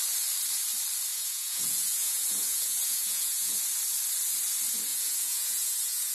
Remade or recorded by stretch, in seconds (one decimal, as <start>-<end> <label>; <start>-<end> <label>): 0.0-1.1 recorded; 1.1-3.6 remade; 3.6-4.9 recorded; 4.9-6.1 remade